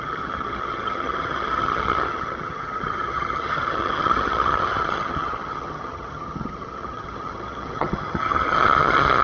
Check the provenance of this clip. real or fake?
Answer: fake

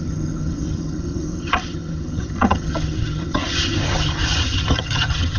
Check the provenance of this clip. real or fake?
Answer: fake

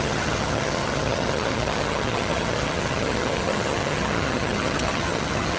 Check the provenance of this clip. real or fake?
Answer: fake